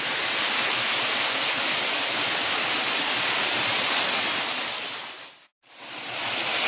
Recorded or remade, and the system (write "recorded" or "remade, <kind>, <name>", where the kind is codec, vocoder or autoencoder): recorded